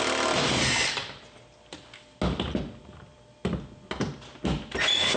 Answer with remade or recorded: recorded